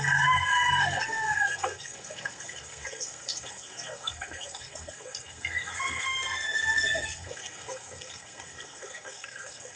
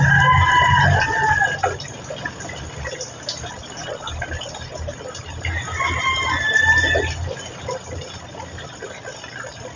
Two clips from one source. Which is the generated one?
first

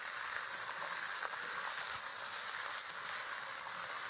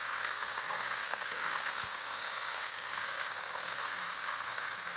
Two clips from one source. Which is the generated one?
second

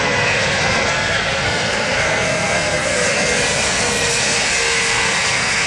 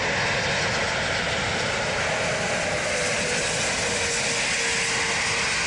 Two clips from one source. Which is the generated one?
first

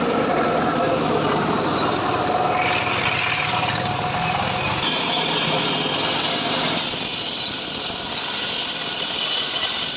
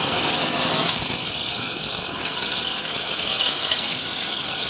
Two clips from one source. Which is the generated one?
second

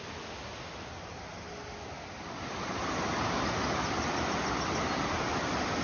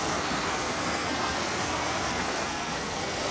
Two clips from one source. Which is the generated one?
second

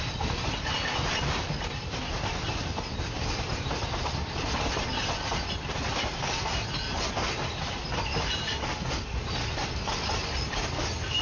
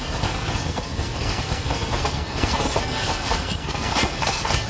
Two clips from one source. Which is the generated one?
second